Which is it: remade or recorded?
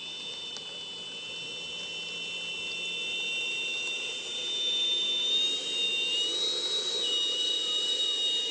recorded